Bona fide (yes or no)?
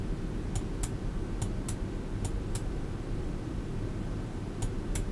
yes